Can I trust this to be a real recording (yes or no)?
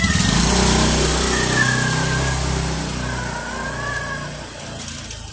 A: yes